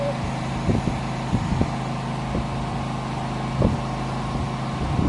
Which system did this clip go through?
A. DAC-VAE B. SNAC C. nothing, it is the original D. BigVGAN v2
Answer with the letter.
C